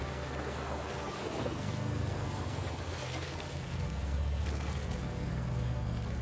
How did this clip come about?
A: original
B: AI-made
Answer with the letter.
B